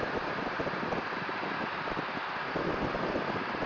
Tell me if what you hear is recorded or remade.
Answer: recorded